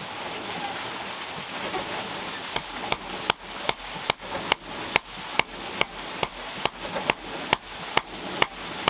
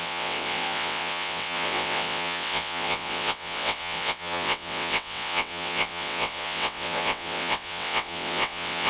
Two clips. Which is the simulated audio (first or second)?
second